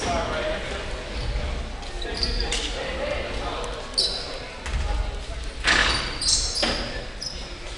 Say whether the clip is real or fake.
real